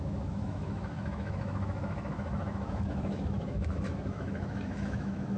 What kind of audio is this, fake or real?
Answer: fake